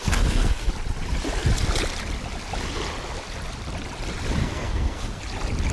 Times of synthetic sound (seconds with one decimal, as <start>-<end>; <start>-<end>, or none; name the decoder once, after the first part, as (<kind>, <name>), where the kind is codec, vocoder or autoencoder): 0.0-0.7 (codec, SNAC); 4.4-5.2